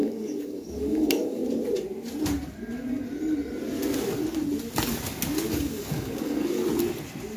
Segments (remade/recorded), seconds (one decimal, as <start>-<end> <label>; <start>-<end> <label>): 0.0-1.4 remade; 1.4-5.5 recorded; 5.5-6.6 remade; 6.6-7.4 recorded